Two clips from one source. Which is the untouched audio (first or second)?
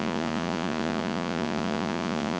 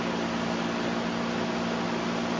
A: second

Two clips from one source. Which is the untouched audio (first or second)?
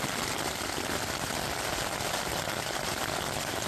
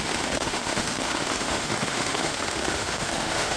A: first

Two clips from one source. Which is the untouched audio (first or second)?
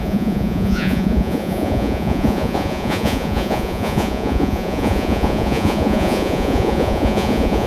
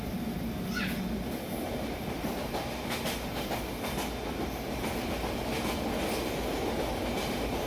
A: second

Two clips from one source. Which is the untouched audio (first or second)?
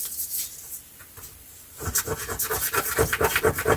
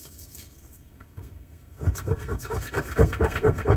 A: first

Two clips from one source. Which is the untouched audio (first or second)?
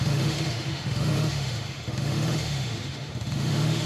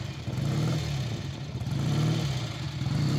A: second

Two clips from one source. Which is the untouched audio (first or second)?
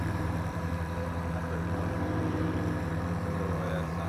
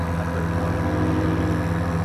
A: second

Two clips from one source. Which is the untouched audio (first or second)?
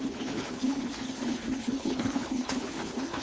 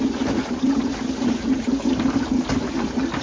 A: second